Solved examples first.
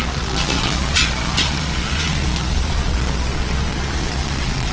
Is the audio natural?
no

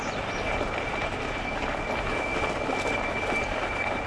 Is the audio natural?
yes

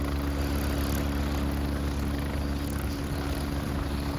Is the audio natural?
yes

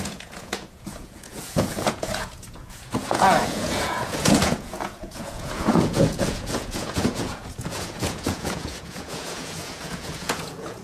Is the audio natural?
no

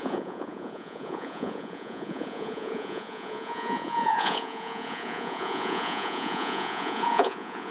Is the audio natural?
no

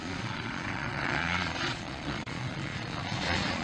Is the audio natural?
no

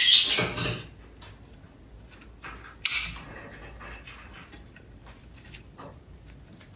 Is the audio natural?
yes